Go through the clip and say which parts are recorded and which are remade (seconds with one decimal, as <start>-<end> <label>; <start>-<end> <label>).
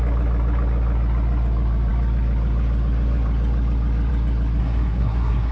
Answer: 0.0-4.6 recorded; 4.6-5.5 remade